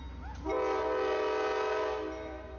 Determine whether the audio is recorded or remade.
recorded